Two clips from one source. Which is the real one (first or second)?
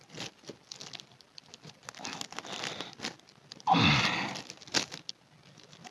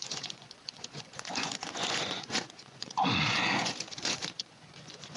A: first